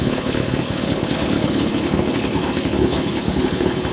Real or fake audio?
fake